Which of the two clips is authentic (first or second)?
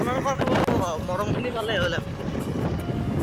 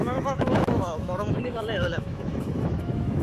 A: first